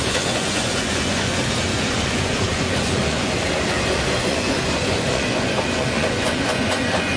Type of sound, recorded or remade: remade